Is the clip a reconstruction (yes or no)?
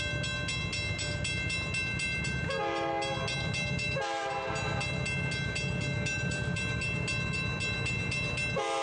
no